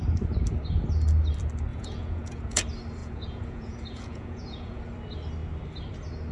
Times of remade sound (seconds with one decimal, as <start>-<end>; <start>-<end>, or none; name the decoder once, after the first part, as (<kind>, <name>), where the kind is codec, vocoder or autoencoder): 1.7-2.6 (vocoder, Vocos); 3.0-4.8